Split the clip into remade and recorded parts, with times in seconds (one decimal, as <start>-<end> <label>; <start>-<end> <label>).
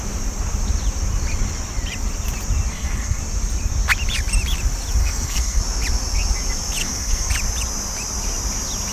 0.0-2.7 recorded; 2.7-3.2 remade; 3.2-5.0 recorded; 5.0-5.6 remade; 5.6-6.8 recorded; 6.8-7.3 remade; 7.3-8.9 recorded